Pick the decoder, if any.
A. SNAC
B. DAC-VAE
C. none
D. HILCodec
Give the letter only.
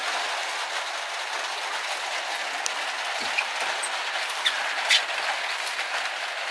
C